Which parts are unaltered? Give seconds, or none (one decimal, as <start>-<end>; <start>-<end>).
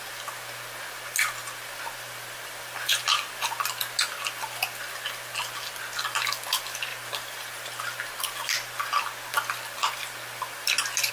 0.0-11.1